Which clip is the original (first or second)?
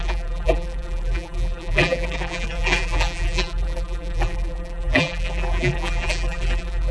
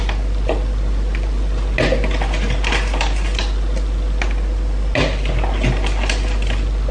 second